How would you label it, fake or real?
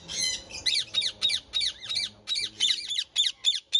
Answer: real